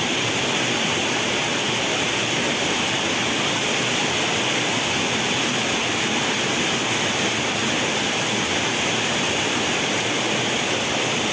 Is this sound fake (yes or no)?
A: no